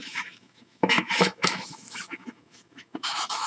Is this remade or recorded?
remade